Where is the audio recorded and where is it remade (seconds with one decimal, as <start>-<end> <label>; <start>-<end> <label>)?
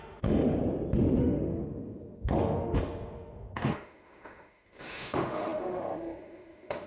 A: 0.0-0.6 remade; 0.6-1.2 recorded; 1.2-6.9 remade